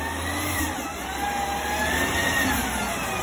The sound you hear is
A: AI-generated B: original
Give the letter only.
B